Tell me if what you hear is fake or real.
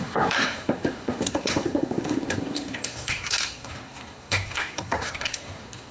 fake